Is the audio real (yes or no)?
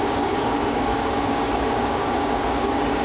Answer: no